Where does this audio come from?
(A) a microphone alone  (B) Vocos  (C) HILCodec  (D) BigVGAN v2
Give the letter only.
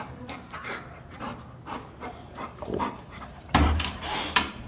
D